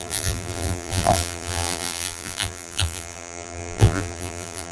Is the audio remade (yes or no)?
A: yes